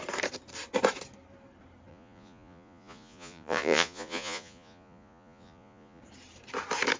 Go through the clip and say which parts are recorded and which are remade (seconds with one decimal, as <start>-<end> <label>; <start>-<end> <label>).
0.0-1.9 recorded; 1.9-6.0 remade; 6.0-7.0 recorded

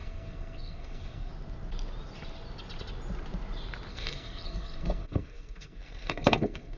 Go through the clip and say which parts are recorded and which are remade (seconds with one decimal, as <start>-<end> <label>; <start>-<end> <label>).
0.0-1.3 remade; 1.3-3.9 recorded; 3.9-6.8 remade

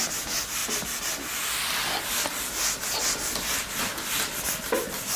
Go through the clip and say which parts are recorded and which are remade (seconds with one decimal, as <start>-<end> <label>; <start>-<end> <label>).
0.0-5.2 recorded

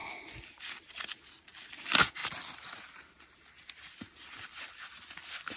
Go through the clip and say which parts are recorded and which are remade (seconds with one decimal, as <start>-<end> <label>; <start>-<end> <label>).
0.0-5.6 recorded

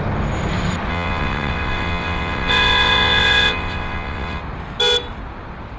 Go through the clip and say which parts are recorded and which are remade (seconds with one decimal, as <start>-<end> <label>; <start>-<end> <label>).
0.0-0.9 recorded; 0.9-4.4 remade; 4.4-5.8 recorded

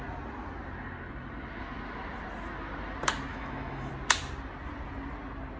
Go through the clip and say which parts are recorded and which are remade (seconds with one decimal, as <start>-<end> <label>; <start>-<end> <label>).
0.0-3.3 recorded; 3.3-3.9 remade; 3.9-5.6 recorded

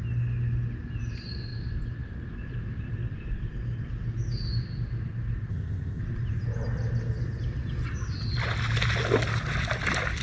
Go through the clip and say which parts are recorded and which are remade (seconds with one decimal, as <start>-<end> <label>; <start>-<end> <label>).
0.0-5.5 recorded; 5.5-6.0 remade; 6.0-10.2 recorded